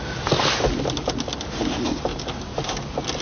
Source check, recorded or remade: recorded